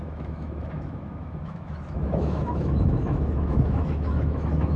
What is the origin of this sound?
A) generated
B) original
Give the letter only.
A